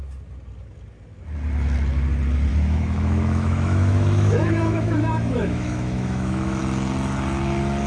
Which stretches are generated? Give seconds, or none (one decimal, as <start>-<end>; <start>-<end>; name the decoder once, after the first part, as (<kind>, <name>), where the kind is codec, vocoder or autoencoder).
2.5-6.6 (autoencoder, DAC-VAE)